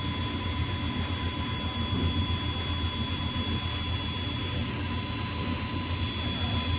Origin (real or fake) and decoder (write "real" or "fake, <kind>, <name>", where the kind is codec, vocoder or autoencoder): real